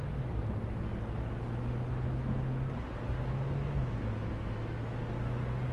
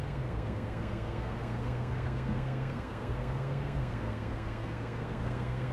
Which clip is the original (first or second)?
first